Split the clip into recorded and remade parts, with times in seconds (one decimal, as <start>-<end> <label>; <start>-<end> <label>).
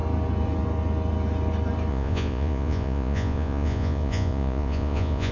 0.0-1.9 recorded; 1.9-5.3 remade